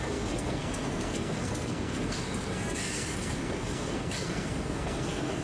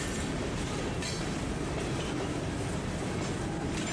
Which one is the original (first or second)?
second